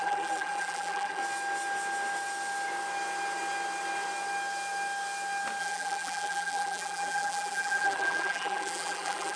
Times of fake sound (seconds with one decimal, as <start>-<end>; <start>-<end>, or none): 0.0-1.2; 5.6-9.4